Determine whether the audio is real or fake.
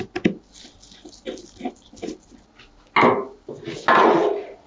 real